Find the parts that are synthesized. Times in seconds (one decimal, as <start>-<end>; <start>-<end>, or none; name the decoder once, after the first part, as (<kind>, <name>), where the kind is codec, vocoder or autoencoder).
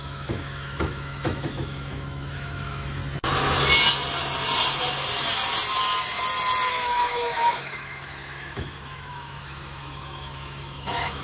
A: 0.0-3.0 (autoencoder, DAC-VAE); 6.7-11.2